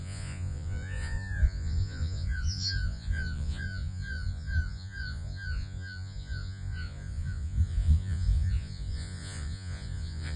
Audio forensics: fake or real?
fake